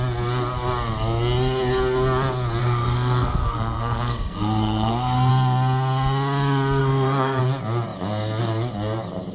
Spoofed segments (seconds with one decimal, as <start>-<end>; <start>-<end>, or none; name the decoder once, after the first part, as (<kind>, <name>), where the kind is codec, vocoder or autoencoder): 2.6-5.3 (codec, SNAC); 6.8-7.4